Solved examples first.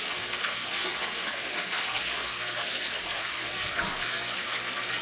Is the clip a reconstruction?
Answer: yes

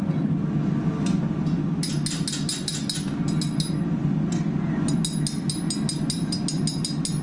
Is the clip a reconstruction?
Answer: no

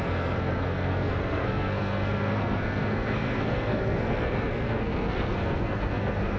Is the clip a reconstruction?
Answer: yes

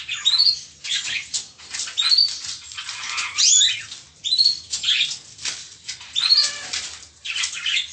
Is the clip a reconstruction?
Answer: no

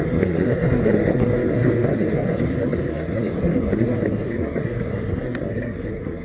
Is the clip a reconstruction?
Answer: yes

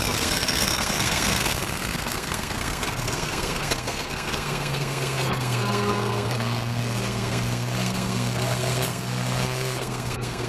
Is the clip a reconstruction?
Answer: yes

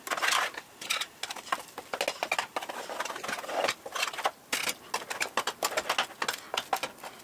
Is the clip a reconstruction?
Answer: no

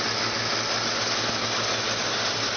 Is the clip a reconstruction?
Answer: no